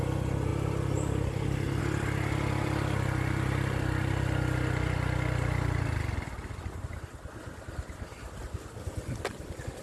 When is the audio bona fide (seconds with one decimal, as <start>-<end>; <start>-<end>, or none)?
0.0-9.8